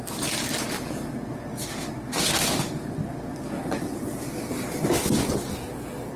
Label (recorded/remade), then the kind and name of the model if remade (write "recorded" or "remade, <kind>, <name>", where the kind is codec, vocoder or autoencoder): recorded